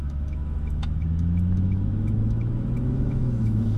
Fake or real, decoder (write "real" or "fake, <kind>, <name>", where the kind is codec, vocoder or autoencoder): fake, autoencoder, DAC-VAE